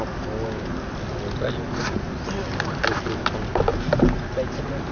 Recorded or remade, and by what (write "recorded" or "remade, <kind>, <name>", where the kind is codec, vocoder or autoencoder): recorded